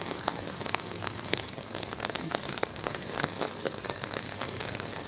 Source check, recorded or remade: remade